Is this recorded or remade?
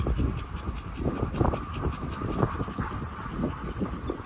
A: recorded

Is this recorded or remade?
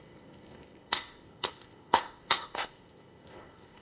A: remade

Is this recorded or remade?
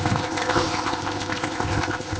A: remade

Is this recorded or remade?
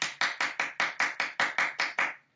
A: recorded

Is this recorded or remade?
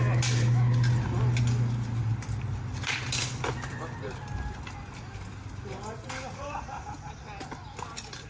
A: recorded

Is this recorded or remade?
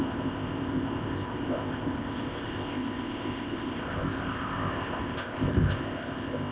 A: remade